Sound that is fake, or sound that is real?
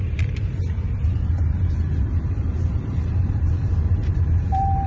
fake